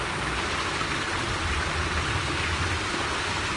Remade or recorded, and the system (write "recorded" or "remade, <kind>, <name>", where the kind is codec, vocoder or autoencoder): recorded